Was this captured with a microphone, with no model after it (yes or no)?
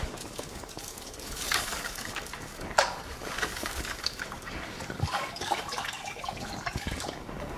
no